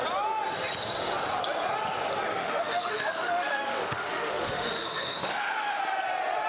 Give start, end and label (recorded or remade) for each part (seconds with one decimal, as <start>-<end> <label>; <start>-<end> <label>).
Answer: 0.0-2.3 recorded; 2.3-5.8 remade; 5.8-6.5 recorded